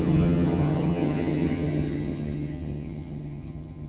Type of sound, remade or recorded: remade